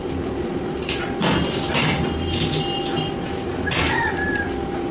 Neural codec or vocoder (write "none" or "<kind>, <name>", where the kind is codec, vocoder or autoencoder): none